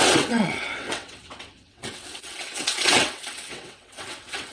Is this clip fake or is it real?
fake